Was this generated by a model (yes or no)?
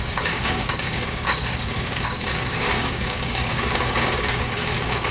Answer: yes